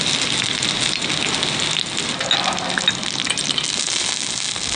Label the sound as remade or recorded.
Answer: recorded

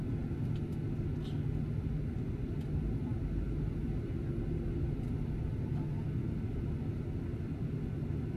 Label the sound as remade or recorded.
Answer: recorded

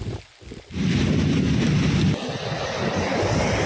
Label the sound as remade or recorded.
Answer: recorded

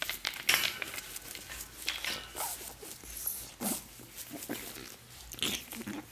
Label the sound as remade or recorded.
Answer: recorded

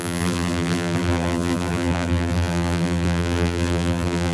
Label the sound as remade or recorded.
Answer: remade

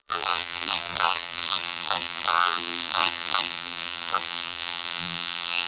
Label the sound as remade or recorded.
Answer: remade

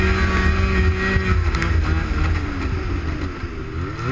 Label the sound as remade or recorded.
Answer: recorded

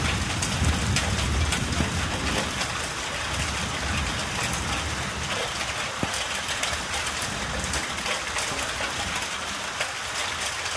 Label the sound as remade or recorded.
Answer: recorded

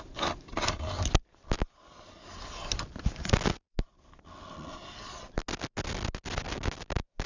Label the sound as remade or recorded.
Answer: recorded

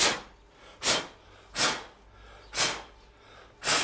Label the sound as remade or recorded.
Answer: recorded